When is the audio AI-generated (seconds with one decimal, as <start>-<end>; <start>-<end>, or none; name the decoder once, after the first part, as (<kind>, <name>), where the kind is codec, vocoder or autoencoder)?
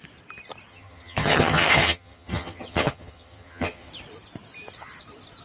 0.7-3.9 (vocoder, HiFi-GAN)